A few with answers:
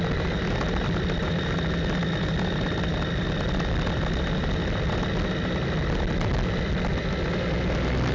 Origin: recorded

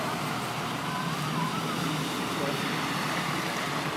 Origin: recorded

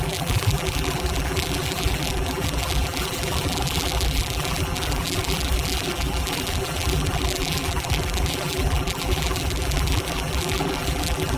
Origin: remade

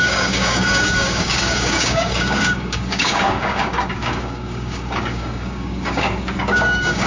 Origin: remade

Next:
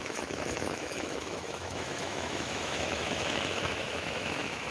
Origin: remade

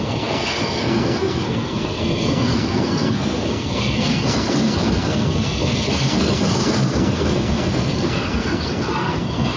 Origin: remade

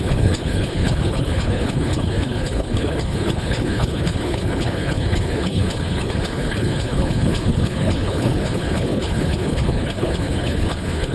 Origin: remade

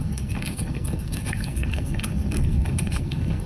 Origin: remade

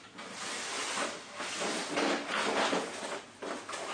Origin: recorded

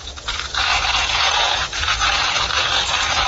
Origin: remade